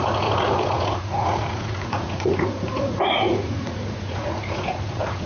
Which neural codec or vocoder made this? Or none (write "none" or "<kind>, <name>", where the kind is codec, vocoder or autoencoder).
vocoder, Vocos